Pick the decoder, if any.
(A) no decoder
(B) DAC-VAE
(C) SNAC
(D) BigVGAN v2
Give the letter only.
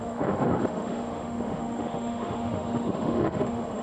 B